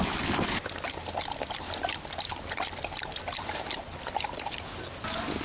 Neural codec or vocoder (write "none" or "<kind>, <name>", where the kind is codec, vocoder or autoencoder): none